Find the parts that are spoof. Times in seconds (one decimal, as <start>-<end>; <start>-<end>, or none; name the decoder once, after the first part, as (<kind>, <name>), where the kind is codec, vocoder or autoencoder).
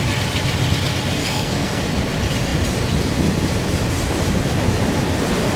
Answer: 1.2-1.8 (codec, SNAC)